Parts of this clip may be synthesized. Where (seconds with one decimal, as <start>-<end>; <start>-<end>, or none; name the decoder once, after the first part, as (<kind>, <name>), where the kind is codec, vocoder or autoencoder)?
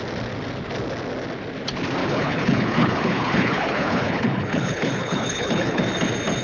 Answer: 2.0-5.8 (codec, HILCodec)